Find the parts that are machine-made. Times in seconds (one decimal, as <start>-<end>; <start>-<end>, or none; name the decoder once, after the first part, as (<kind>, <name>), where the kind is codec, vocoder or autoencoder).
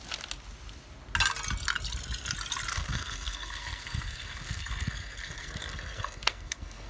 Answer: 2.7-6.9 (codec, SNAC)